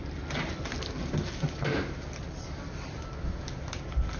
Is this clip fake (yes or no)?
no